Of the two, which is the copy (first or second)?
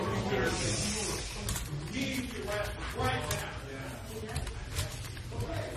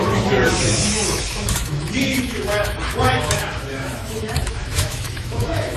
second